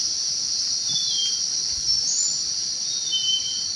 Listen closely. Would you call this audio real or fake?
real